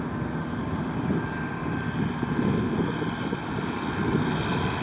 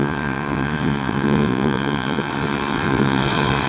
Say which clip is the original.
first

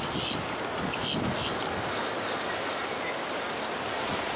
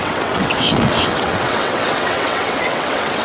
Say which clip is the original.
first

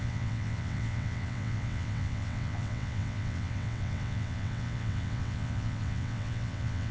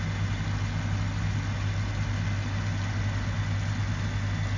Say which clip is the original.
second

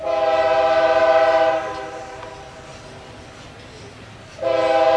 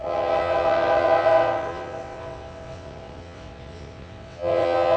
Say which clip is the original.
first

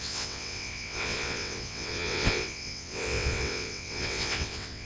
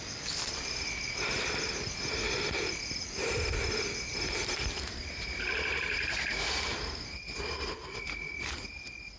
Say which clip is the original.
second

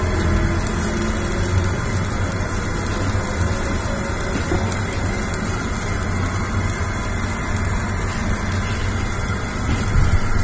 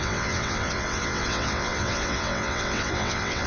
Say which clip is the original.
first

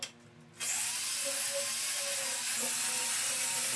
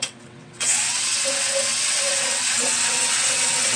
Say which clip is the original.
first